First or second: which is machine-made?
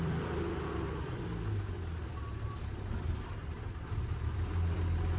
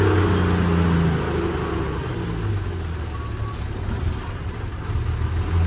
first